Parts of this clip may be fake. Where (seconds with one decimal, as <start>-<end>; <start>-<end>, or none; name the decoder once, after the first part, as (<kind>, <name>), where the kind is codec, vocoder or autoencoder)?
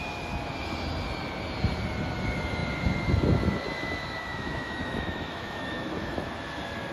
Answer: 4.3-6.3 (autoencoder, DAC-VAE)